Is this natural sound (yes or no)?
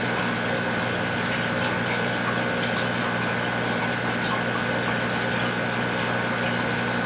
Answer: yes